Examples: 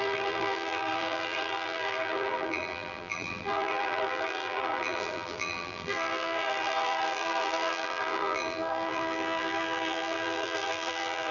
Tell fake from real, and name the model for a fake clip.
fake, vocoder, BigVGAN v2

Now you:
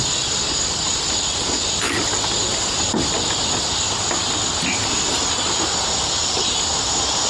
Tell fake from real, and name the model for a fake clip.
real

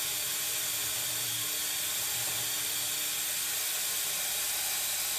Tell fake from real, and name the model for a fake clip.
real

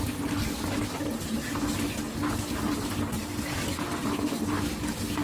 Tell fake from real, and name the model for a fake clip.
real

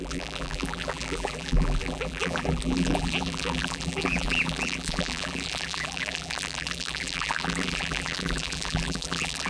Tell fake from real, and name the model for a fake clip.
fake, vocoder, BigVGAN v2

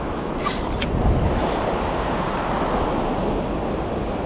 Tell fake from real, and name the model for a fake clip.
real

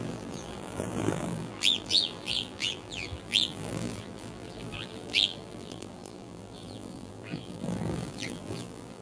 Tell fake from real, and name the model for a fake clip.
fake, vocoder, BigVGAN v2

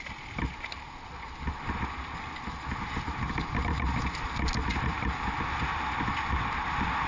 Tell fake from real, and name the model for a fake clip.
real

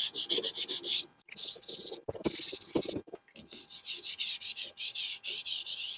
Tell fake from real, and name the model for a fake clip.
real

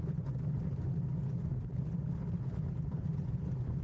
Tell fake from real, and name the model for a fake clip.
real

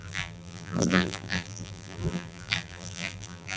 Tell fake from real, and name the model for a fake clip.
fake, vocoder, BigVGAN v2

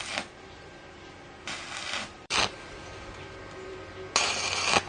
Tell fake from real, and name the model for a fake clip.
fake, vocoder, BigVGAN v2